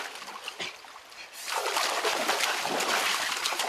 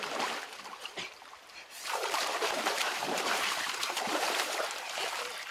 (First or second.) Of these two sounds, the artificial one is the second